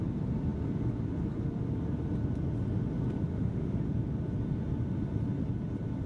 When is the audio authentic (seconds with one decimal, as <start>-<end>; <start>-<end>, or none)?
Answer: 0.0-3.3; 3.8-6.1